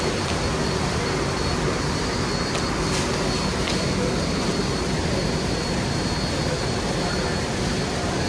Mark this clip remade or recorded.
recorded